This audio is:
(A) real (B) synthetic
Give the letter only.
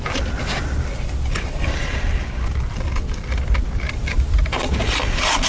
B